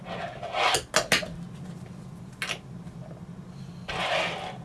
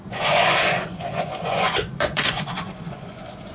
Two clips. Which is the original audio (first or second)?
first